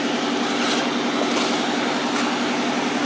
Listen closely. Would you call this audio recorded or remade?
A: recorded